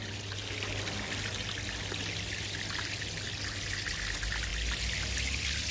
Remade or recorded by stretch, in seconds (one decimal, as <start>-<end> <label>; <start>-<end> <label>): 0.0-5.7 recorded